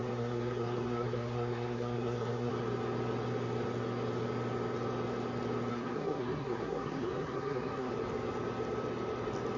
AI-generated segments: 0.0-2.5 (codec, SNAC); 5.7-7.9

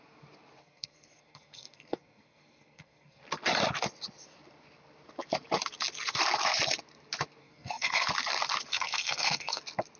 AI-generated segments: 0.6-3.2 (codec, SNAC); 7.4-8.1; 8.7-9.6

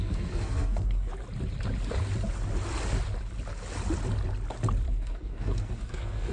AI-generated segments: 0.0-1.1 (codec, SNAC); 4.9-6.3

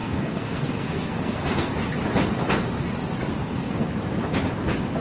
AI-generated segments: 0.0-1.7 (codec, SNAC); 3.4-3.9

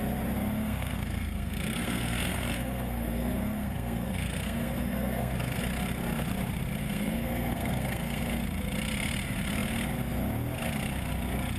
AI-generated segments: 0.5-5.6 (codec, SNAC); 6.8-8.2

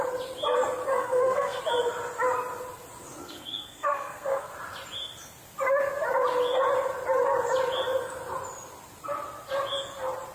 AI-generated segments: 0.9-1.6 (codec, SNAC); 3.2-4.5